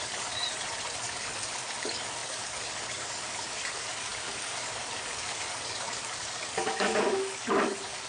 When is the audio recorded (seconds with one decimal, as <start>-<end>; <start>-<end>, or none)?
0.4-1.0